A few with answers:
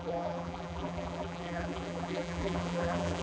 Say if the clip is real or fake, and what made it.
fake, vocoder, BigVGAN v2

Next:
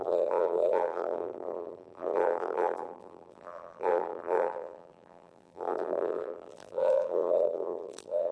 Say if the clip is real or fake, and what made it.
fake, vocoder, BigVGAN v2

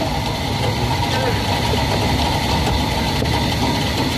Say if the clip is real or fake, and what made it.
real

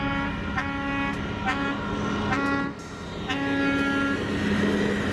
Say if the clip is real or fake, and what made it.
real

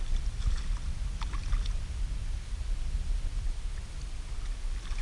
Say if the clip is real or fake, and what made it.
real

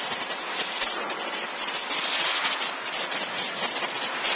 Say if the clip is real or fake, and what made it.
real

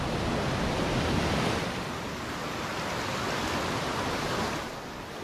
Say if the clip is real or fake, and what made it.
real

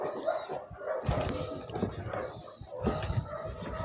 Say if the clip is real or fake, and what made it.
real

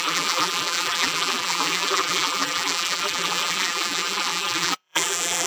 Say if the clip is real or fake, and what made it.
fake, vocoder, BigVGAN v2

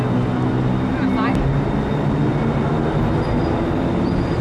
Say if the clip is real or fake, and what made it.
real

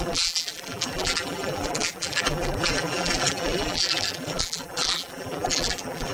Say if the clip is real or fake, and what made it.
fake, vocoder, BigVGAN v2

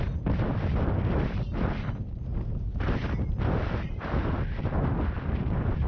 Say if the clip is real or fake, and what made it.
real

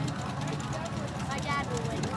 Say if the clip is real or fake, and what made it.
real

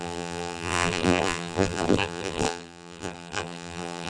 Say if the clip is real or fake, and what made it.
fake, vocoder, BigVGAN v2